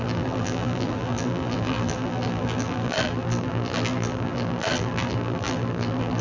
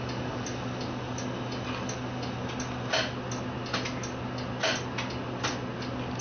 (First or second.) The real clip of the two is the second